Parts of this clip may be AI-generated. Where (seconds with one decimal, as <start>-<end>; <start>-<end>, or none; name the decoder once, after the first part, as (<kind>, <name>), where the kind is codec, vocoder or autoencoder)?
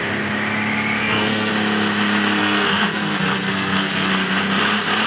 1.0-1.5 (codec, SNAC); 2.4-4.1